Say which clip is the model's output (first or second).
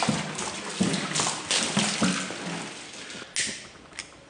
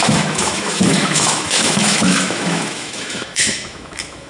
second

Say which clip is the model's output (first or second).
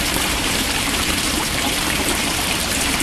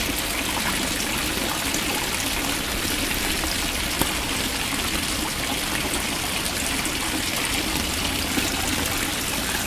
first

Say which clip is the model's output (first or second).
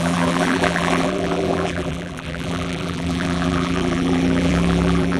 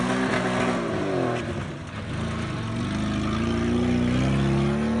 first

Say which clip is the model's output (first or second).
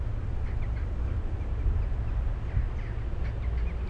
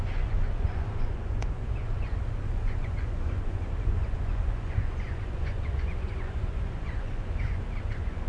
second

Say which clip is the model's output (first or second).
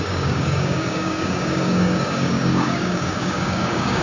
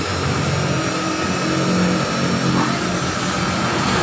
first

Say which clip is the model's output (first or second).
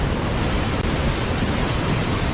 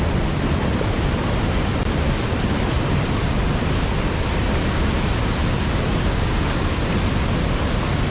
first